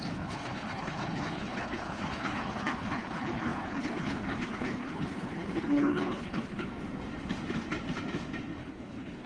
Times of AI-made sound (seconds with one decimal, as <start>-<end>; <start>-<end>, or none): 0.0-6.7; 8.6-9.3